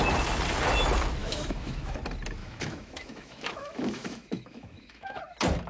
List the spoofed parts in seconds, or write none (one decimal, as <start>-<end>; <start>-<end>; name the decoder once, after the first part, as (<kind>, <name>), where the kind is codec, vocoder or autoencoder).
1.2-2.0 (autoencoder, DAC-VAE); 2.4-5.2